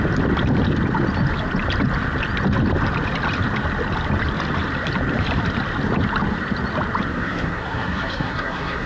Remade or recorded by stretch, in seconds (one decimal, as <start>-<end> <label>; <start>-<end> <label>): 0.0-7.1 recorded; 7.1-8.9 remade